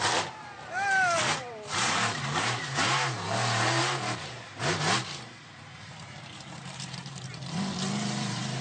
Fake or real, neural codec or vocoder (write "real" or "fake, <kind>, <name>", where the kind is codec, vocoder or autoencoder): fake, vocoder, BigVGAN v2